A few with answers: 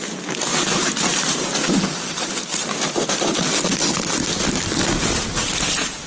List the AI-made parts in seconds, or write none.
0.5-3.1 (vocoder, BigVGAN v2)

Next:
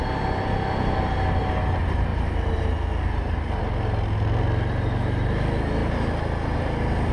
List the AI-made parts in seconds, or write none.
none

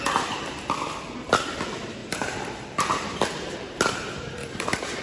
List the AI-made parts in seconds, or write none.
2.0-3.1 (vocoder, BigVGAN v2); 4.4-5.0

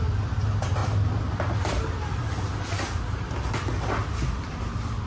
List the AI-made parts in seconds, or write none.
0.8-3.9 (vocoder, BigVGAN v2)